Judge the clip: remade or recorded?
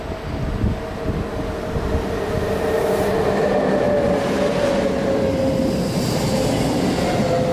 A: recorded